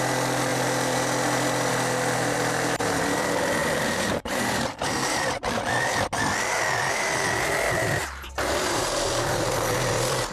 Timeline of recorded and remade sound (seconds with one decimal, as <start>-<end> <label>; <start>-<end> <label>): 0.0-3.6 recorded; 3.6-5.6 remade; 5.6-8.0 recorded; 8.0-9.5 remade; 9.5-10.3 recorded